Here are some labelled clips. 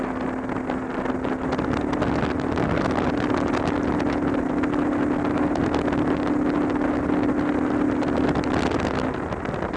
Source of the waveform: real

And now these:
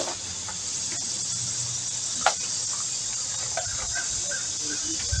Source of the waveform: real